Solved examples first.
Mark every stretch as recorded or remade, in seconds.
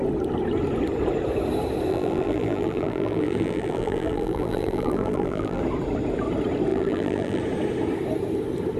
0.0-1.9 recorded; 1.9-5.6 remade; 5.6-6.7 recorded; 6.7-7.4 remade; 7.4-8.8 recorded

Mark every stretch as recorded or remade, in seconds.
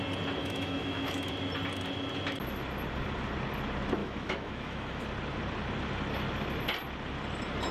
0.0-0.4 recorded; 0.4-1.3 remade; 1.3-4.0 recorded; 4.0-5.0 remade; 5.0-7.7 recorded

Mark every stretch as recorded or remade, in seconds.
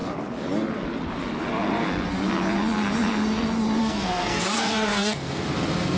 0.0-3.8 recorded; 3.8-5.4 remade; 5.4-6.0 recorded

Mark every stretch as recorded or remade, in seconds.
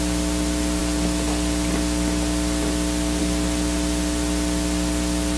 0.0-5.4 recorded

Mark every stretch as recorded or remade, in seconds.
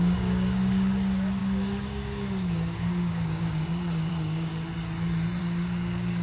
0.0-4.5 remade; 4.5-5.4 recorded; 5.4-6.2 remade